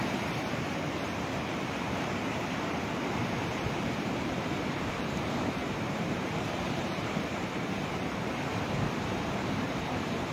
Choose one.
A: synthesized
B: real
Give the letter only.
A